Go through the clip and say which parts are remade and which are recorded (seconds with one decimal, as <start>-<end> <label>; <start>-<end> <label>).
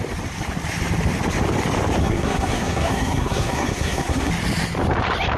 0.0-2.0 recorded; 2.0-4.3 remade; 4.3-5.4 recorded